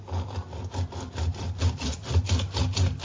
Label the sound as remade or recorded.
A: recorded